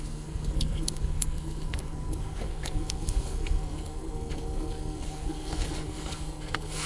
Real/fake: fake